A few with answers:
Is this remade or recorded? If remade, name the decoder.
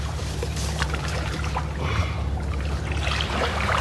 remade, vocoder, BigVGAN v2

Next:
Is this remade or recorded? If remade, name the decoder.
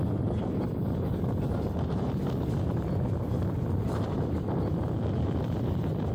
remade, vocoder, BigVGAN v2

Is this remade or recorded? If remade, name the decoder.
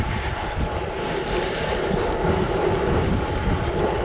recorded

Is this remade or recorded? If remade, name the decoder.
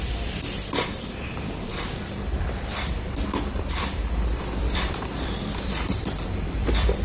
remade, vocoder, BigVGAN v2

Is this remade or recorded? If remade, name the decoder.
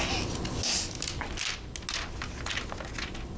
recorded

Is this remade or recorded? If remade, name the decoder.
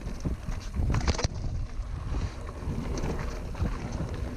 recorded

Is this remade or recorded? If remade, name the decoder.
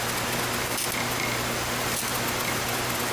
recorded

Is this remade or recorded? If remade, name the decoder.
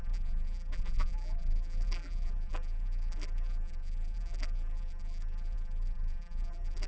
remade, vocoder, BigVGAN v2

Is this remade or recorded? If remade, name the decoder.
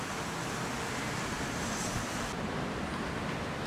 recorded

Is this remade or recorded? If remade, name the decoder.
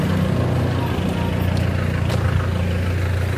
recorded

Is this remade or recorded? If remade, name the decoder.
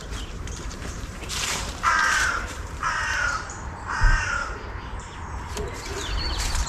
remade, vocoder, BigVGAN v2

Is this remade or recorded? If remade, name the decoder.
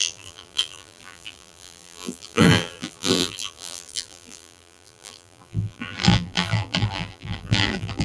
remade, vocoder, BigVGAN v2